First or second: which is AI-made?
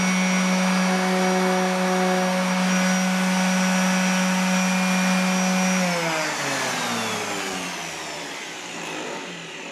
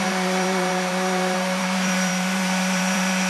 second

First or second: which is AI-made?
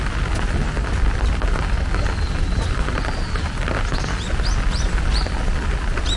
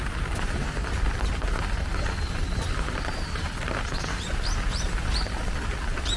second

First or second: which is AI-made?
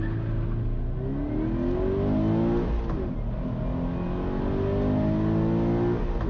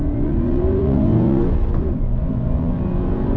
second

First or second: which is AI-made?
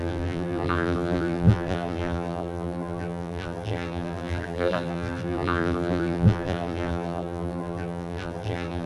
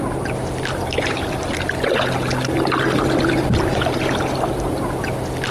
first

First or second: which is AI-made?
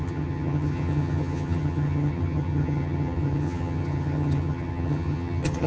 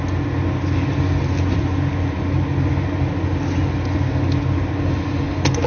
first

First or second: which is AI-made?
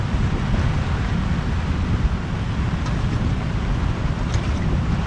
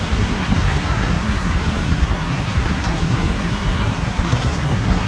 second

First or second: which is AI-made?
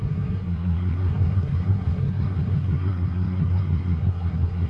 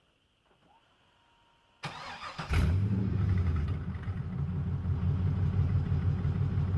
first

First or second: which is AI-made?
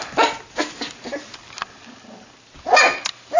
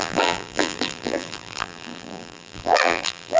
second